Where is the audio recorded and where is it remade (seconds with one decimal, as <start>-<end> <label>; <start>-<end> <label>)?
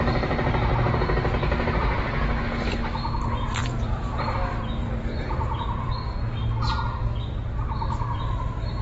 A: 0.0-3.6 recorded; 3.6-5.9 remade; 5.9-7.4 recorded; 7.4-8.4 remade; 8.4-8.8 recorded